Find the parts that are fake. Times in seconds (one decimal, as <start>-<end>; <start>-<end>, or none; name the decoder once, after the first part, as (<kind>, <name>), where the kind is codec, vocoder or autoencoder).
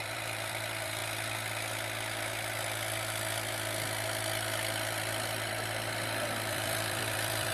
0.0-1.0 (vocoder, BigVGAN v2); 5.5-7.5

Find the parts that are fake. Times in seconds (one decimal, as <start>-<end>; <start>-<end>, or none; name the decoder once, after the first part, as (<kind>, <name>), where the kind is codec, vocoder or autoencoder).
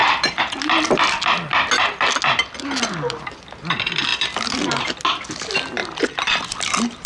0.0-1.0 (vocoder, BigVGAN v2); 4.1-4.7; 5.8-6.4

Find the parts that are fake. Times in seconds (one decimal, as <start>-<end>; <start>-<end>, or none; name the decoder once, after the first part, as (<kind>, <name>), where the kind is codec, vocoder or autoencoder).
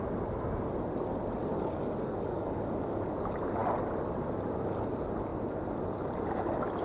1.5-3.1 (codec, DAC)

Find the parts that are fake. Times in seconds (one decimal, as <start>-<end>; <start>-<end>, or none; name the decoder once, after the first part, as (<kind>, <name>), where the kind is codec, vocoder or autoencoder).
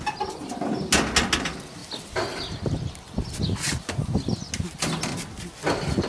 none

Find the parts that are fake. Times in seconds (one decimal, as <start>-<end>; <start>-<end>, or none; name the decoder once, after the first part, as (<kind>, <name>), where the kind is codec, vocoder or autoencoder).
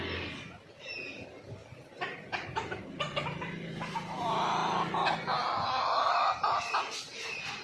none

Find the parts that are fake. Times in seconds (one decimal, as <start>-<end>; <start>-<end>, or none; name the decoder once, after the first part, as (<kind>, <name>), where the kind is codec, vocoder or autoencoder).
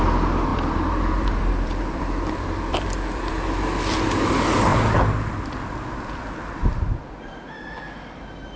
0.5-3.3 (vocoder, BigVGAN v2)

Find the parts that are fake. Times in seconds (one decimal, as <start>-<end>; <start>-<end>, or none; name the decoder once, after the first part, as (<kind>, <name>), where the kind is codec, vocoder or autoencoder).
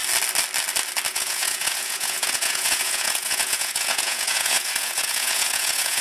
1.1-6.0 (vocoder, Vocos)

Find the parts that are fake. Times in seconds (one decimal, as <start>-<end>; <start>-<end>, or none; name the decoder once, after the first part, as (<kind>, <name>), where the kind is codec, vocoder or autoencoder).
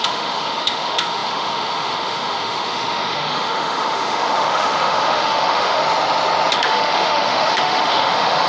0.0-5.8 (autoencoder, DAC-VAE); 6.5-8.5